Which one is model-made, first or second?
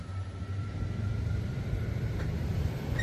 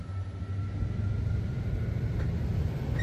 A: first